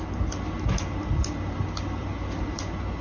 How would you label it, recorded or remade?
recorded